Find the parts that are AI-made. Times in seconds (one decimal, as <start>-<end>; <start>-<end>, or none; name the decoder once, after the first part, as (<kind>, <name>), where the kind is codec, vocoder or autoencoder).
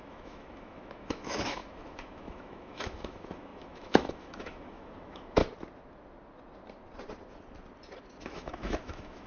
0.0-5.4 (autoencoder, DAC-VAE); 8.2-9.3